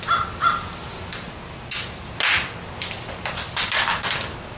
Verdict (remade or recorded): recorded